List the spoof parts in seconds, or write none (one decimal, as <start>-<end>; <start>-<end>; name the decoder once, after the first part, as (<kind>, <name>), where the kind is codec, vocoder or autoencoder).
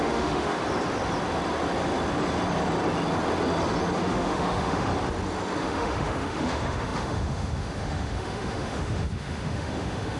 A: 0.0-0.6 (autoencoder, DAC-VAE); 4.0-4.9; 5.6-10.2